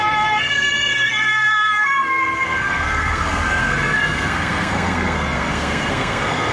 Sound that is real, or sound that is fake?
fake